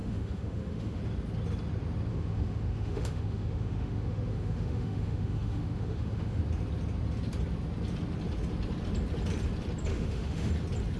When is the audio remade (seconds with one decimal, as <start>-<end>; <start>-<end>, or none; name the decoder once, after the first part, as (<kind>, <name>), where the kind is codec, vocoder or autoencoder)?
0.0-1.0 (autoencoder, DAC-VAE); 2.1-6.4; 9.9-10.5